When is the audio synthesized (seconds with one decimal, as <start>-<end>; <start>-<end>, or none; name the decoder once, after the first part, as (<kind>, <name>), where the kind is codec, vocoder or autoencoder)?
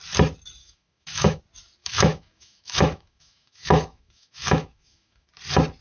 0.6-1.4 (autoencoder, DAC-VAE); 1.8-5.3